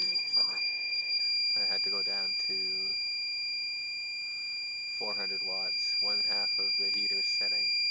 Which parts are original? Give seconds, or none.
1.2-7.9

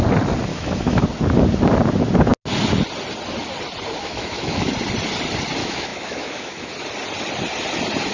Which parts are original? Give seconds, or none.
0.0-0.5; 1.0-4.0; 4.7-5.6; 6.7-8.1

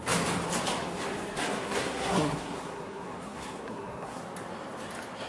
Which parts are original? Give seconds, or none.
0.0-1.4; 4.2-5.3

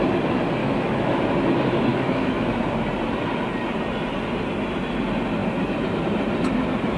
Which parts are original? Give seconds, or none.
0.0-0.6; 1.2-1.9; 2.5-7.0

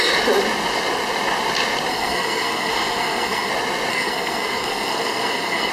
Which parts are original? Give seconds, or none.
0.0-1.9; 3.5-3.9

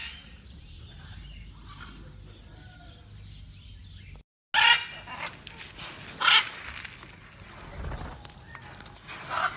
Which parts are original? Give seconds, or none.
0.0-9.6

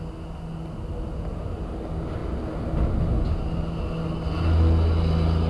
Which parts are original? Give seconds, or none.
0.0-5.5